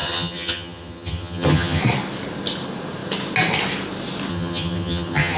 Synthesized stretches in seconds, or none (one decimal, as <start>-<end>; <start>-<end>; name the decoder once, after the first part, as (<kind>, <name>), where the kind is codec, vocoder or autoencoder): 0.0-1.8 (vocoder, HiFi-GAN); 4.3-5.4